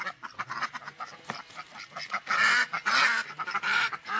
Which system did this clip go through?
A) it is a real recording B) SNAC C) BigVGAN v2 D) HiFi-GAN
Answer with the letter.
A